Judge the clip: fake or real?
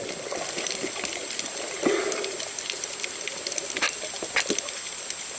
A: real